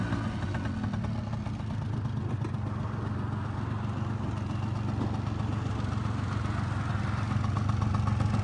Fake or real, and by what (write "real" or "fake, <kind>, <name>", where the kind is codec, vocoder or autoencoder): real